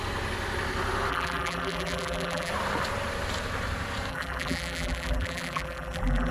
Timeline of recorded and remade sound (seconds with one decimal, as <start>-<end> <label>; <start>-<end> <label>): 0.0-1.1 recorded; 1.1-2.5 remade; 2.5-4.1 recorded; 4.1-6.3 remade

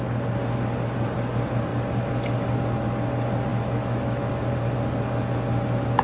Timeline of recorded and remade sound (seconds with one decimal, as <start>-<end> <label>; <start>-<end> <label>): 0.0-3.5 recorded; 3.5-4.3 remade; 4.3-6.0 recorded

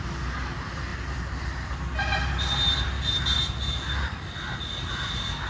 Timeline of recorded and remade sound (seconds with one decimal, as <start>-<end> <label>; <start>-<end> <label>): 0.0-5.5 recorded